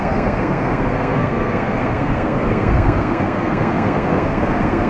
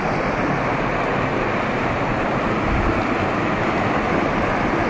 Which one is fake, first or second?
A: first